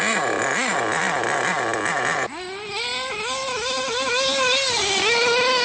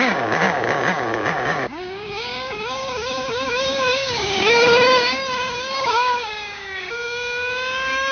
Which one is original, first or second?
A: first